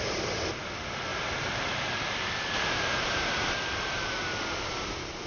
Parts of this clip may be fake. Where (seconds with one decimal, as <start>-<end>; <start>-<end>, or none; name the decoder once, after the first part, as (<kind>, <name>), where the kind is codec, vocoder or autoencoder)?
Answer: 1.1-4.1 (vocoder, BigVGAN v2)